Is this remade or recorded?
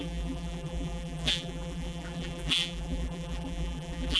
remade